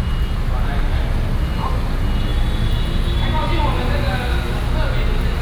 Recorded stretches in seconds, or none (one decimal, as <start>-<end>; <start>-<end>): 0.0-5.4